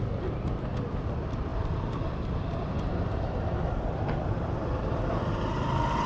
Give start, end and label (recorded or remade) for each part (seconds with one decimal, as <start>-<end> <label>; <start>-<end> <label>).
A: 0.0-1.5 recorded; 1.5-5.2 remade; 5.2-6.1 recorded